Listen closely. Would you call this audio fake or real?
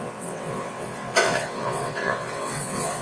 fake